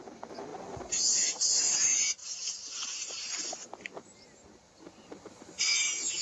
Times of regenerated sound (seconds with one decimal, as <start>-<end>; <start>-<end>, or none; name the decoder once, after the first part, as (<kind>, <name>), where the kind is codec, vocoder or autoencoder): none